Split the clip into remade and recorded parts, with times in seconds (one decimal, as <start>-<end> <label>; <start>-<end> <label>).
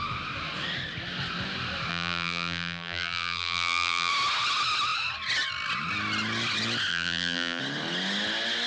0.0-1.9 recorded; 1.9-4.1 remade; 4.1-6.9 recorded; 6.9-7.6 remade; 7.6-8.7 recorded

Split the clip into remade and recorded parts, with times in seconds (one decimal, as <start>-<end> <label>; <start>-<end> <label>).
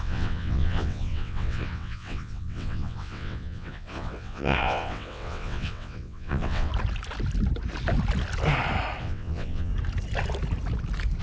0.0-6.7 remade; 6.7-9.0 recorded; 9.0-9.7 remade; 9.7-11.2 recorded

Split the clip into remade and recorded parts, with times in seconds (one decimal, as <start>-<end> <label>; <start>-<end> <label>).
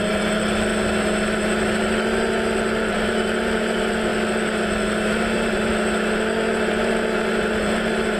0.0-0.7 remade; 0.7-2.8 recorded; 2.8-4.1 remade; 4.1-5.1 recorded; 5.1-5.7 remade; 5.7-6.5 recorded; 6.5-8.2 remade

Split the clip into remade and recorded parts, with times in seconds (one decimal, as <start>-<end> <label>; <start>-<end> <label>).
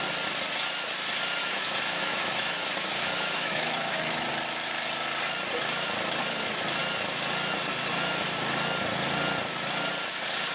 0.0-1.4 recorded; 1.4-4.3 remade; 4.3-10.5 recorded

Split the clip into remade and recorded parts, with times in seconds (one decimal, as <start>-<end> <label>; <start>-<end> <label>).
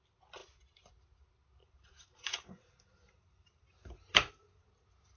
0.0-1.6 recorded; 1.6-4.7 remade; 4.7-5.2 recorded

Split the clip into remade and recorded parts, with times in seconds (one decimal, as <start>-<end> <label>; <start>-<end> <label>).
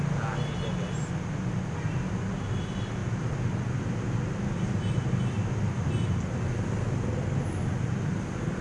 0.0-8.6 recorded